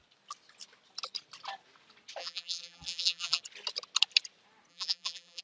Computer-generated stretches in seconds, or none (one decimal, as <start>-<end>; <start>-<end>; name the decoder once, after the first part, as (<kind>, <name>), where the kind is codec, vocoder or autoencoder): 2.2-3.4 (vocoder, BigVGAN v2); 4.7-5.4